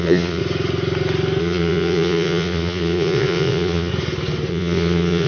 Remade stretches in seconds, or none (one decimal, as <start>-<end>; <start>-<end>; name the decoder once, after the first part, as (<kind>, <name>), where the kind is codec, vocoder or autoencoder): 0.0-0.4 (vocoder, Vocos); 1.4-3.9; 4.5-5.3